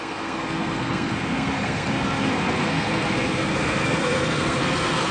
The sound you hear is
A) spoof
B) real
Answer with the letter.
A